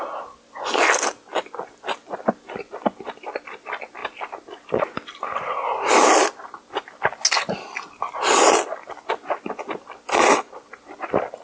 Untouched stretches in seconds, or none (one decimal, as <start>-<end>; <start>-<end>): 0.0-11.4